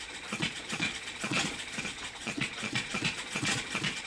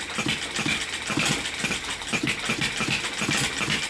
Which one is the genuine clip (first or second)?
second